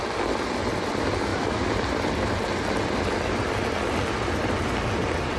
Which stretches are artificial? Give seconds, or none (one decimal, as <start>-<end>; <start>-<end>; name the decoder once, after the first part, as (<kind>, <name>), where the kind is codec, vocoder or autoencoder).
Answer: none